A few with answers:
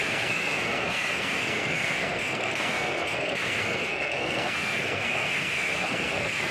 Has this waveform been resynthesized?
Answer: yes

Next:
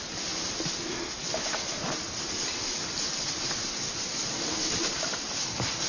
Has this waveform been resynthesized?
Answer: no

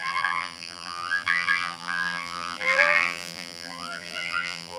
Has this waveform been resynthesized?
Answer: yes